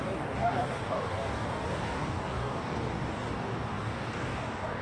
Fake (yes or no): yes